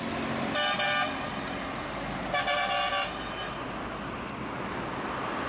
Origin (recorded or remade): recorded